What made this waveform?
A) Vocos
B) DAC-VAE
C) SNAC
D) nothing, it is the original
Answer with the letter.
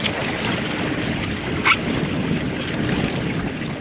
D